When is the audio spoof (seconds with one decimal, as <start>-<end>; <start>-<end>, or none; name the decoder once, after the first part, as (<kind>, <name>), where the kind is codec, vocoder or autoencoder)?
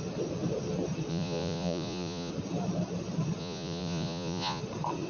1.1-2.3 (vocoder, Vocos); 3.4-4.6